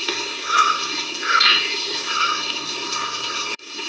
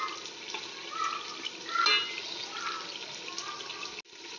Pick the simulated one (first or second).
first